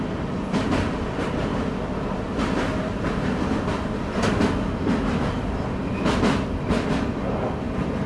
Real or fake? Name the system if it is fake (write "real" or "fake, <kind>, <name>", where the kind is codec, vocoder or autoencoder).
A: real